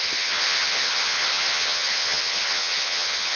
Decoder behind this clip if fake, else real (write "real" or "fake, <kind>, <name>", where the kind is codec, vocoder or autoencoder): fake, vocoder, HiFi-GAN